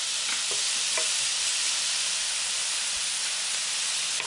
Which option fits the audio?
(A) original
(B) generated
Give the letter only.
A